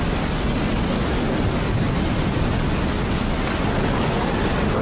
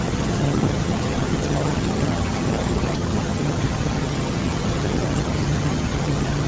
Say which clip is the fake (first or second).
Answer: second